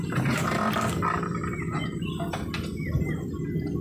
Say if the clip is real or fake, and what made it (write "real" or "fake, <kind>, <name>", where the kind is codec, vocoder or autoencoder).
real